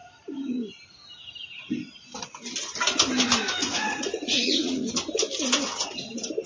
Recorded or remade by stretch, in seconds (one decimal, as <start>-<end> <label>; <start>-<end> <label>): 0.0-3.6 recorded; 3.6-4.9 remade; 4.9-6.5 recorded

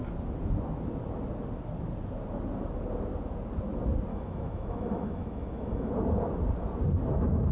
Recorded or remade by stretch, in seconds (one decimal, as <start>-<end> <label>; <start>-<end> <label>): 0.0-4.1 recorded; 4.1-5.9 remade; 5.9-7.5 recorded

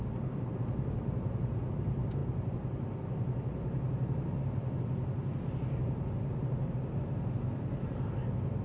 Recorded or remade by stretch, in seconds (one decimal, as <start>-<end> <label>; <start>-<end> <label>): 0.0-8.6 recorded

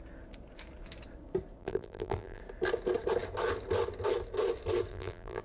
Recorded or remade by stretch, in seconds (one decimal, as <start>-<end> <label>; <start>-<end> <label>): 0.0-1.6 recorded; 1.6-2.4 remade; 2.4-4.9 recorded; 4.9-5.4 remade

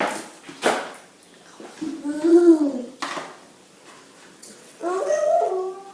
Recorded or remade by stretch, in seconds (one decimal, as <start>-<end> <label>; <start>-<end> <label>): 0.0-2.3 recorded; 2.3-2.9 remade; 2.9-4.4 recorded; 4.4-5.5 remade; 5.5-5.9 recorded